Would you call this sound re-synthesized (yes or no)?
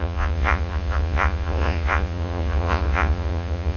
yes